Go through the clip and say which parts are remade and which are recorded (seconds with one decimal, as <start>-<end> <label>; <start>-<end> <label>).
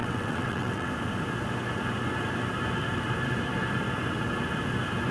0.0-0.9 remade; 0.9-5.1 recorded